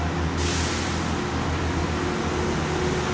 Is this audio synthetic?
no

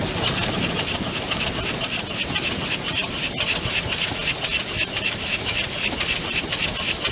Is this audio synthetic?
no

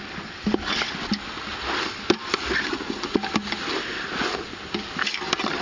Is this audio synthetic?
no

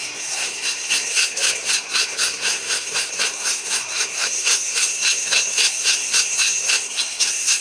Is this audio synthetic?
yes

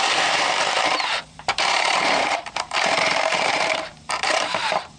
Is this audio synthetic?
yes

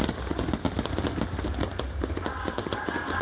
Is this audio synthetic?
no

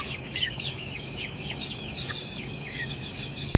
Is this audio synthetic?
yes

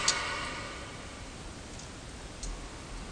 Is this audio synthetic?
no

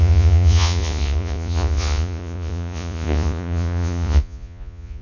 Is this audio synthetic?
yes